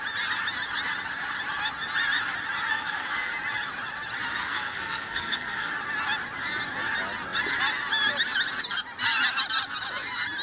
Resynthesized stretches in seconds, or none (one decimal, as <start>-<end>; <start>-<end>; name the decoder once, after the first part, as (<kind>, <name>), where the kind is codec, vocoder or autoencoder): 2.7-3.3 (codec, SNAC); 4.4-5.7